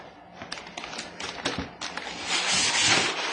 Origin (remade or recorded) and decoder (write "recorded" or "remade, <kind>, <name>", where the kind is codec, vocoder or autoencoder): recorded